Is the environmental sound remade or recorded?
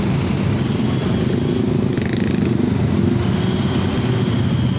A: recorded